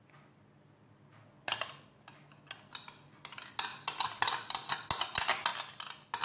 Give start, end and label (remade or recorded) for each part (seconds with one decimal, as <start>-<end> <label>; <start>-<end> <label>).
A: 0.0-6.2 recorded